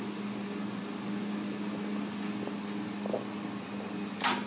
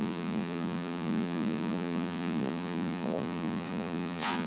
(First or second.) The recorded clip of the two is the first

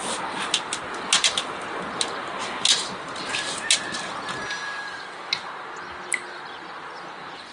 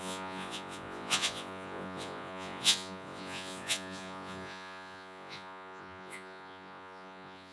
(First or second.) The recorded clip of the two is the first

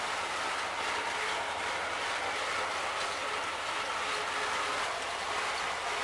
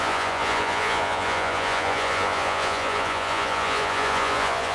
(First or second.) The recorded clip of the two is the first